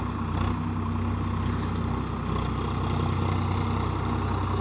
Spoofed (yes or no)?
no